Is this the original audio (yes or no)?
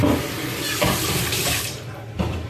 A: yes